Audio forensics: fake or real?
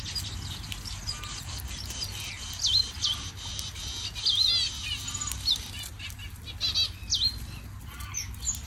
real